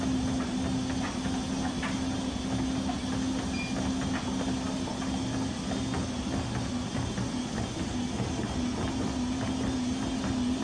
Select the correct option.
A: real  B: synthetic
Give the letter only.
A